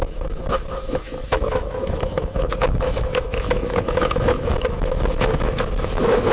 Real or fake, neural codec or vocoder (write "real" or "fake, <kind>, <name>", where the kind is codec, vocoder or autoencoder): fake, autoencoder, DAC-VAE